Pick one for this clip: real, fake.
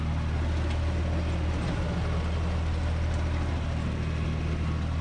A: real